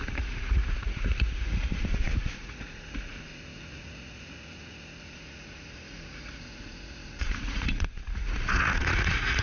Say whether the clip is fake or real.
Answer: fake